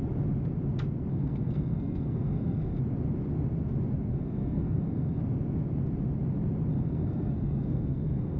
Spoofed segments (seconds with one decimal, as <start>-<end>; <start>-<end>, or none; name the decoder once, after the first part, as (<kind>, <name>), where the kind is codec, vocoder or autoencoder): 1.1-2.8 (codec, SNAC); 4.1-5.2; 6.7-8.4